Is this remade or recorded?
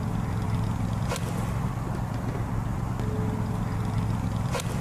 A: recorded